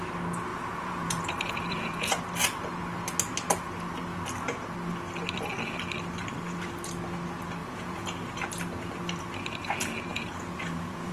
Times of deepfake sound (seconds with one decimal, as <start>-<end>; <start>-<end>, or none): 0.5-2.2; 7.6-8.2; 10.1-11.1